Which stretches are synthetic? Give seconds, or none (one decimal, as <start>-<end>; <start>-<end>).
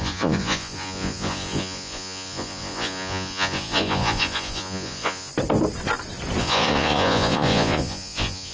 0.0-5.3; 6.4-8.5